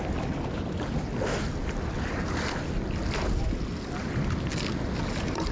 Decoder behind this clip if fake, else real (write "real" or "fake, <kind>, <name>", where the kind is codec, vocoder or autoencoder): real